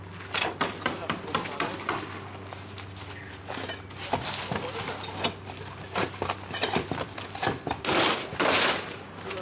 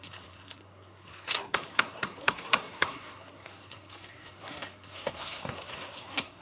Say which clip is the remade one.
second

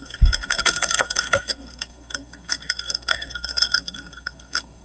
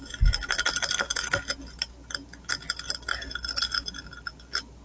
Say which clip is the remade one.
first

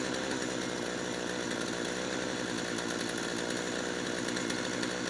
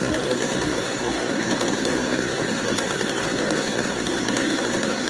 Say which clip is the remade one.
second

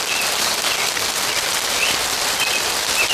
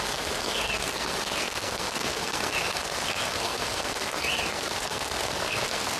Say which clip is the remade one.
second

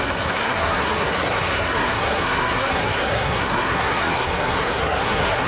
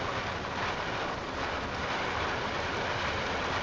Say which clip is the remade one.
first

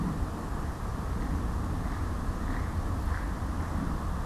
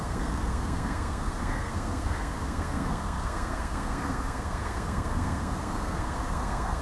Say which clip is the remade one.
second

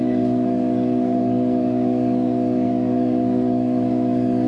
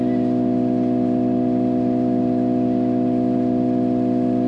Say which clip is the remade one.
first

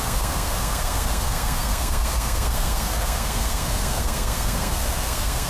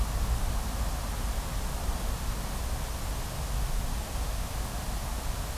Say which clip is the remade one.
first